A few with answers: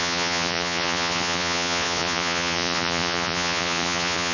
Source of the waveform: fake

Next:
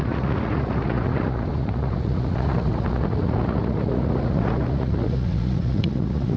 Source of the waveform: fake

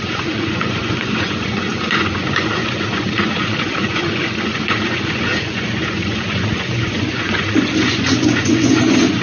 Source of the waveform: fake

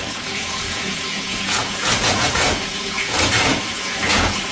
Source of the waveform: fake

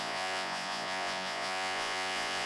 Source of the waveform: fake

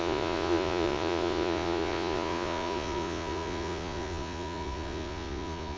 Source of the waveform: fake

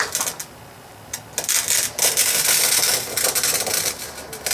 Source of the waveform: real